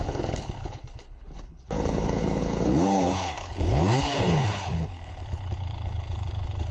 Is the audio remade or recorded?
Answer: remade